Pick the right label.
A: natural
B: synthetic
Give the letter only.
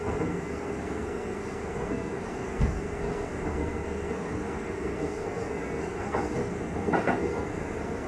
B